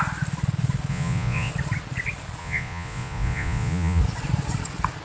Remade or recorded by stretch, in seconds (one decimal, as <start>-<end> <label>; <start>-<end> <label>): 0.0-0.9 recorded; 0.9-1.5 remade; 1.5-2.4 recorded; 2.4-4.0 remade; 4.0-5.0 recorded